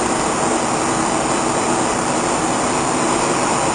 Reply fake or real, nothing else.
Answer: real